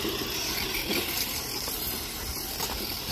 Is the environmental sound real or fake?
real